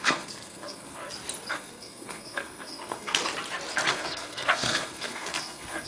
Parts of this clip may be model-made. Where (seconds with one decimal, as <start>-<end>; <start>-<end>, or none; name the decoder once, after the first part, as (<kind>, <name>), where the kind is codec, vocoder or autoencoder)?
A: 0.0-1.0 (codec, SNAC); 1.5-3.2; 3.9-5.9